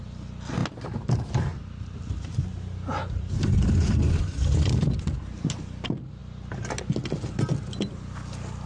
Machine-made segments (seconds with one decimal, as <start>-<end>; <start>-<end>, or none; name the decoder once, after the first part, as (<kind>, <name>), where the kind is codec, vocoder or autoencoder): none